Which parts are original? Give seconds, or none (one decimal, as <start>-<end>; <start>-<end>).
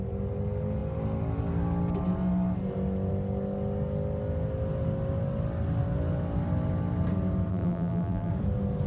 0.0-7.5; 8.3-8.9